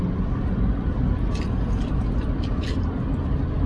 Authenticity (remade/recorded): recorded